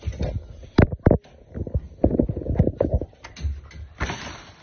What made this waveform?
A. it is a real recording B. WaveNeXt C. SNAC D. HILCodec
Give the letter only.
A